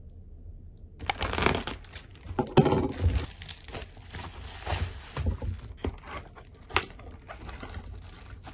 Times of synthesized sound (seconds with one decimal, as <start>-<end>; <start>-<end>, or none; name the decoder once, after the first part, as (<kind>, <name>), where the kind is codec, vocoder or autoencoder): none